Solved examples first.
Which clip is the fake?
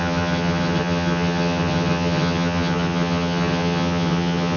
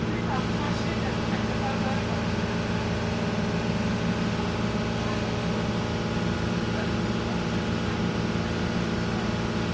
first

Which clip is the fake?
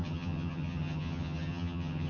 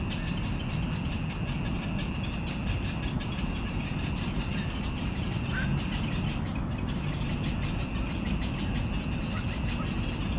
first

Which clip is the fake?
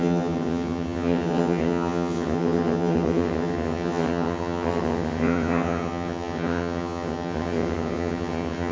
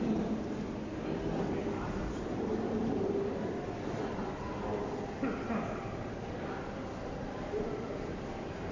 first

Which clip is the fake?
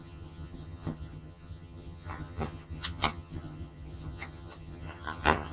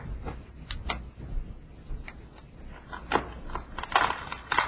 first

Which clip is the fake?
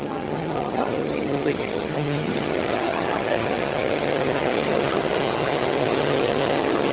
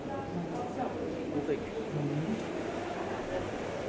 first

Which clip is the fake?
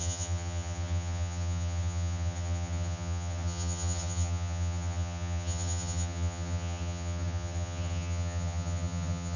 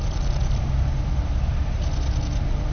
first